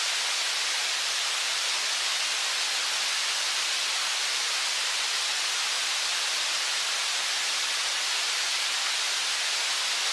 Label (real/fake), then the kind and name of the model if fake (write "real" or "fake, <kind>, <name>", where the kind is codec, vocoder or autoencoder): real